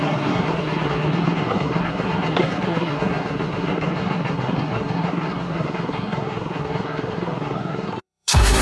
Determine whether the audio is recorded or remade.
remade